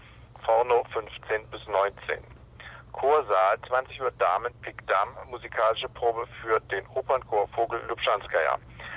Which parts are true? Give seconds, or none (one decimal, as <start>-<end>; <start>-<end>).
0.0-9.0